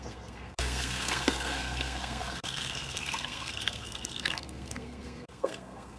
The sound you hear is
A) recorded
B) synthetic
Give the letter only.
B